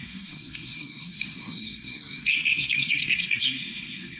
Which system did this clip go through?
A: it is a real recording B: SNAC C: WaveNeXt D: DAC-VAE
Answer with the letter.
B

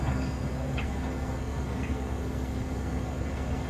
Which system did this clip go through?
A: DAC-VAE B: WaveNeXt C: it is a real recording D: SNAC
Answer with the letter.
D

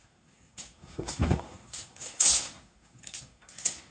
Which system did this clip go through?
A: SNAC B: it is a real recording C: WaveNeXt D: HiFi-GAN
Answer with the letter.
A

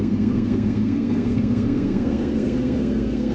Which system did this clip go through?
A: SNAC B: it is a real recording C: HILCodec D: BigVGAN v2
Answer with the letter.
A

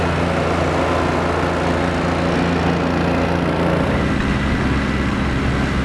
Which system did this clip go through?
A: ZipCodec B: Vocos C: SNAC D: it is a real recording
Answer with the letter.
D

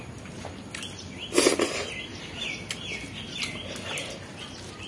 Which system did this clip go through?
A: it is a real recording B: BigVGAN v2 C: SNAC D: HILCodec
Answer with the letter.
A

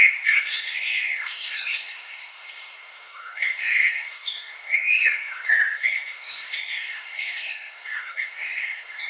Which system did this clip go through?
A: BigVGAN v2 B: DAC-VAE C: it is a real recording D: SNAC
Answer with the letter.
D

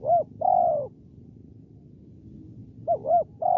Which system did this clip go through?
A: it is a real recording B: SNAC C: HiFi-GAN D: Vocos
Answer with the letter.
A